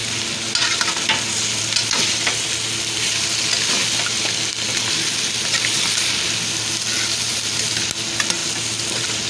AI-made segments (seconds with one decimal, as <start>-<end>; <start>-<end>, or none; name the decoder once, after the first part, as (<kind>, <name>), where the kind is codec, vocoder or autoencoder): 8.4-9.3 (vocoder, BigVGAN v2)